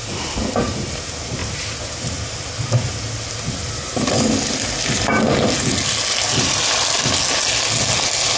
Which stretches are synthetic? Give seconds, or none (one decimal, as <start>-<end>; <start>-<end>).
1.4-2.9